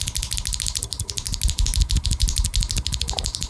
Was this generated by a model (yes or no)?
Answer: no